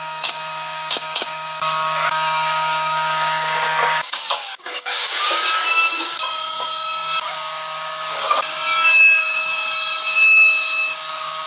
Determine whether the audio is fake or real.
fake